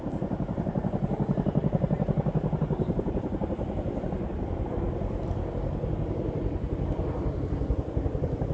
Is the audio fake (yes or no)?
no